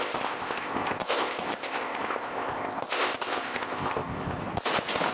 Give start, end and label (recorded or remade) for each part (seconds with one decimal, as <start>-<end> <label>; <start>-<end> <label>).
0.0-4.4 remade; 4.4-5.1 recorded